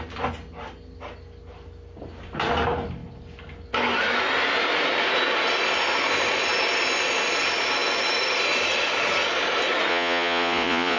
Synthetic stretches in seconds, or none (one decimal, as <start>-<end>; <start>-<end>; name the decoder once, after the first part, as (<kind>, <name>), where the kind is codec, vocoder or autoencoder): 9.9-11.0 (vocoder, Vocos)